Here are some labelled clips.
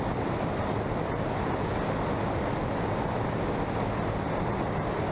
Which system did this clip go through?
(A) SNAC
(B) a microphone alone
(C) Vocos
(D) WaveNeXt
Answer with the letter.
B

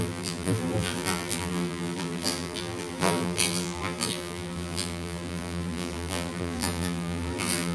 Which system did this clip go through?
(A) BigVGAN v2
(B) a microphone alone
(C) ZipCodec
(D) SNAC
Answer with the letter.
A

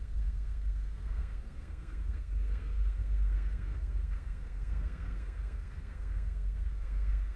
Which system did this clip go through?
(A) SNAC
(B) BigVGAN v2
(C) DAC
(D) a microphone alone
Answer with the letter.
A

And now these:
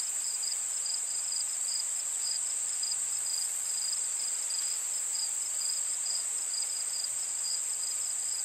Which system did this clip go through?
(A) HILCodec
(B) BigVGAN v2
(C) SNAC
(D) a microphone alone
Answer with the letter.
B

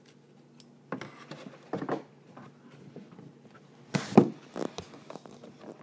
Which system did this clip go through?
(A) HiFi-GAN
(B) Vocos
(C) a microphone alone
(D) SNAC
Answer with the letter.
C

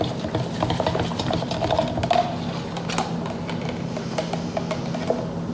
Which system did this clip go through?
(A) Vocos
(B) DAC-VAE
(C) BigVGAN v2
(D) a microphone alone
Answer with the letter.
D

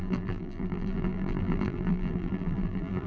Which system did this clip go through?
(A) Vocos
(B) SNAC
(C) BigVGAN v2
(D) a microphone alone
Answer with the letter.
C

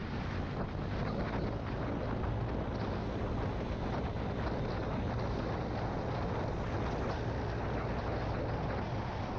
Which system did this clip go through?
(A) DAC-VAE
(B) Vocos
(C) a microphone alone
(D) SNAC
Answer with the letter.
C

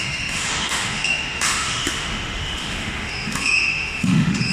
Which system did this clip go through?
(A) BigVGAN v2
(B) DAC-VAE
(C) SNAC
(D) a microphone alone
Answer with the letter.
B